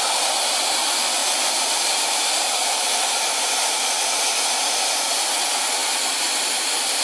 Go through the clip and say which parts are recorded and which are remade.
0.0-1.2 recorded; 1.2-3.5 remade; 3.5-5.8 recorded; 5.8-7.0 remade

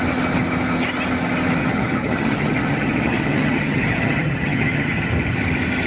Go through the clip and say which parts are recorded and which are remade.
0.0-1.6 recorded; 1.6-5.1 remade; 5.1-5.9 recorded

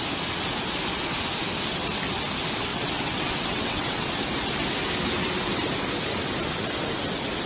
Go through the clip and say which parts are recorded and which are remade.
0.0-2.7 recorded; 2.7-4.1 remade; 4.1-7.5 recorded

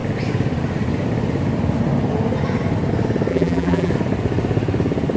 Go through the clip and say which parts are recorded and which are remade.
0.0-3.3 recorded; 3.3-3.9 remade; 3.9-5.2 recorded

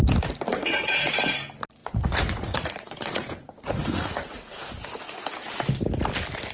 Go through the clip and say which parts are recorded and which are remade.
0.0-0.5 recorded; 0.5-1.1 remade; 1.1-1.8 recorded; 1.8-4.7 remade; 4.7-6.5 recorded

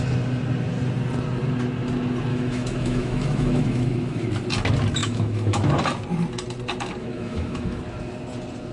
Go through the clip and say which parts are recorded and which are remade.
0.0-2.3 recorded; 2.3-4.3 remade; 4.3-5.0 recorded; 5.0-5.7 remade; 5.7-7.0 recorded; 7.0-7.8 remade; 7.8-8.7 recorded

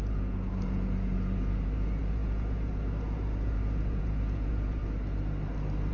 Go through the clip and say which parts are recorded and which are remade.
0.0-4.8 remade; 4.8-5.9 recorded

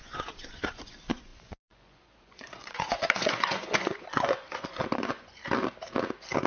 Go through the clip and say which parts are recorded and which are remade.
0.0-5.4 remade; 5.4-6.5 recorded